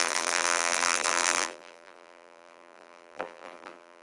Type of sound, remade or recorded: remade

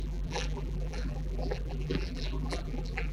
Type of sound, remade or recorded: remade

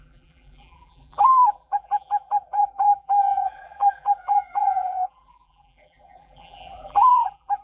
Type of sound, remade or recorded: remade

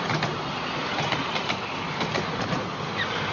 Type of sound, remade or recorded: recorded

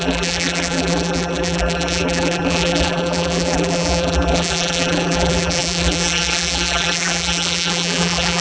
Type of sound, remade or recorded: remade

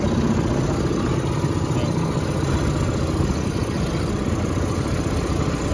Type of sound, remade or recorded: recorded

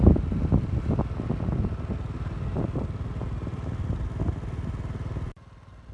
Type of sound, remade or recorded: recorded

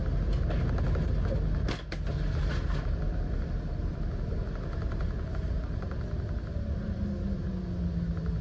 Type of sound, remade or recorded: recorded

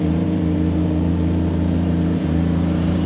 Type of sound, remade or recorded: remade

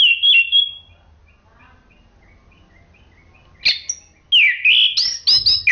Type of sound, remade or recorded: recorded